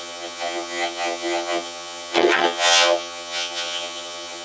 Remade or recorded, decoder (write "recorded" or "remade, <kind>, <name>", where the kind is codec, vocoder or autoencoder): remade, vocoder, HiFi-GAN